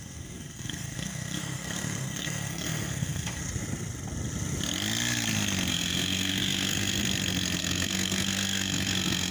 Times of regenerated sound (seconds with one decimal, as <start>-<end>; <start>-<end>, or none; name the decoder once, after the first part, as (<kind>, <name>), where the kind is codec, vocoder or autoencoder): 0.0-3.4 (codec, SNAC); 5.7-7.0; 7.6-9.3